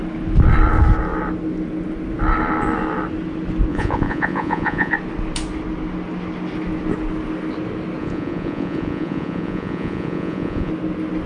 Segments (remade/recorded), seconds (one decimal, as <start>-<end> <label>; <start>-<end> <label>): 0.0-3.7 recorded; 3.7-4.9 remade; 4.9-8.0 recorded; 8.0-10.7 remade; 10.7-11.3 recorded